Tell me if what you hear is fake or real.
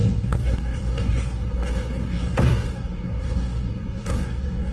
fake